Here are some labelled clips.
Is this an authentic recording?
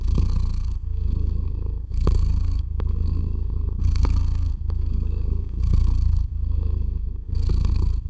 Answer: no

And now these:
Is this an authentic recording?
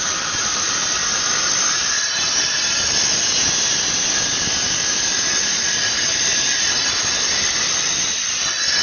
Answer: no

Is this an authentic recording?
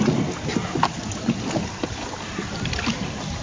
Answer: yes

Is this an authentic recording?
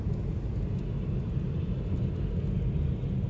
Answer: yes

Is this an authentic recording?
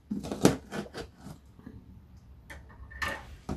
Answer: yes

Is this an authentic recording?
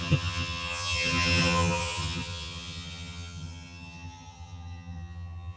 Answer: no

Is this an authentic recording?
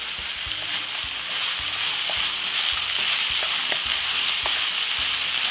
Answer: yes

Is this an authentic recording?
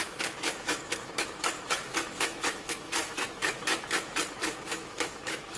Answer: no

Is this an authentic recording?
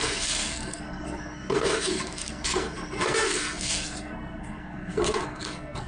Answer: no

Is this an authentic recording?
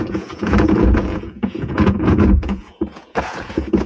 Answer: no